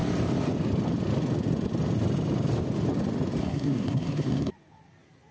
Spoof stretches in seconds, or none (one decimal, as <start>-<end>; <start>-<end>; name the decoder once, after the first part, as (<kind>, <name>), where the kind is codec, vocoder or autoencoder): 3.4-4.5 (codec, SNAC)